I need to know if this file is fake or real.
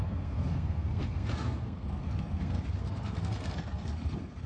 fake